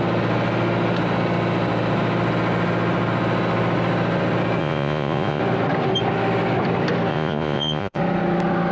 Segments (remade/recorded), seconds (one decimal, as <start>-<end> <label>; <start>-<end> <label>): 0.0-4.6 recorded; 4.6-5.4 remade; 5.4-7.1 recorded; 7.1-8.0 remade; 8.0-8.7 recorded